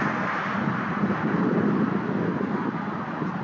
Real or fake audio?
real